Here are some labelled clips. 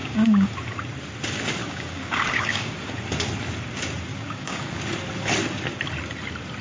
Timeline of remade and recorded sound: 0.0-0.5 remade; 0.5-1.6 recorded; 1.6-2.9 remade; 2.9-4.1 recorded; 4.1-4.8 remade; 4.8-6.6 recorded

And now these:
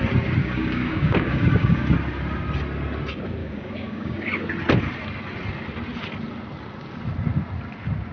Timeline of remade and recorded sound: 0.0-0.4 recorded; 0.4-1.8 remade; 1.8-3.4 recorded; 3.4-4.3 remade; 4.3-8.1 recorded

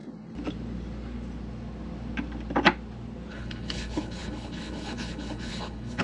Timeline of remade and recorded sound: 0.0-3.3 recorded; 3.3-6.0 remade

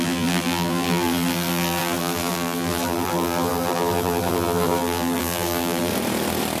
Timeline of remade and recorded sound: 0.0-5.9 remade; 5.9-6.6 recorded

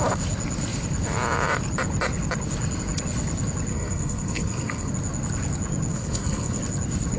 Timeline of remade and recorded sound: 0.0-3.7 recorded; 3.7-4.9 remade; 4.9-5.9 recorded; 5.9-6.6 remade; 6.6-7.2 recorded